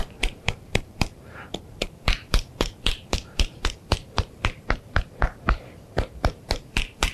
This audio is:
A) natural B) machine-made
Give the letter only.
B